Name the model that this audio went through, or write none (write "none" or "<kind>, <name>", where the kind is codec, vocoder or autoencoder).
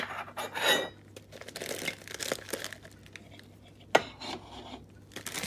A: none